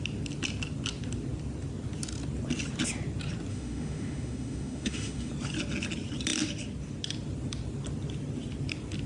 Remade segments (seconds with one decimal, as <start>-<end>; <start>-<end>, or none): 3.5-5.3